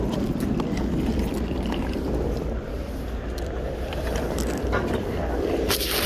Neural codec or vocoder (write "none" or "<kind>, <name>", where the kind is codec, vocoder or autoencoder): vocoder, BigVGAN v2